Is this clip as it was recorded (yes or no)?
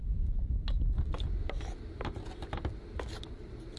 yes